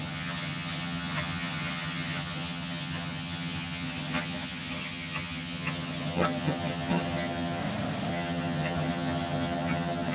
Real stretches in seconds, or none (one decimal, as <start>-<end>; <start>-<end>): 7.6-8.1